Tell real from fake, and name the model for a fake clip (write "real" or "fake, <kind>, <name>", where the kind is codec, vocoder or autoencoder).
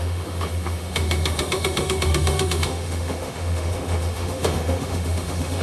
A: fake, autoencoder, DAC-VAE